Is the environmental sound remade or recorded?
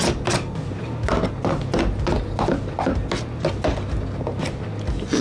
recorded